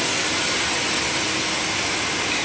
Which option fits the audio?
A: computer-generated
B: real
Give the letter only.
B